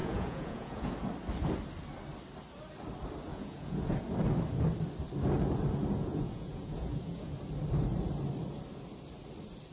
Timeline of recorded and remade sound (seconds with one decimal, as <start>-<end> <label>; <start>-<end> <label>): 0.0-0.9 remade; 0.9-3.3 recorded; 3.3-4.0 remade; 4.0-6.0 recorded; 6.0-7.3 remade; 7.3-9.7 recorded